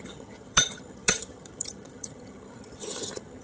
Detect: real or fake fake